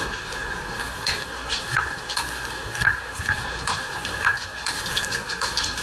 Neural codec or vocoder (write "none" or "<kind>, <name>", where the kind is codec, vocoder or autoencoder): codec, SNAC